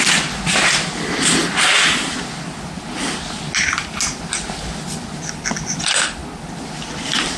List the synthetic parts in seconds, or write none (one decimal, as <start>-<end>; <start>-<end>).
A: none